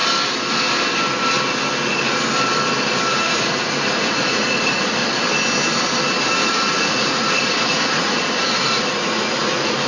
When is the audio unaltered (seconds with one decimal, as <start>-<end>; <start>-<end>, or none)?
0.0-3.1; 5.0-6.3